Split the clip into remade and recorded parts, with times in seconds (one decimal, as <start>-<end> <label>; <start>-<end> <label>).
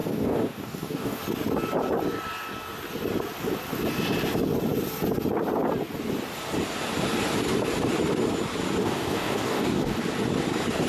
0.0-1.2 remade; 1.2-8.8 recorded; 8.8-10.0 remade; 10.0-10.9 recorded